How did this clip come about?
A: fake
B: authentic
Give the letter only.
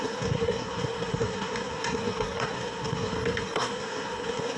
A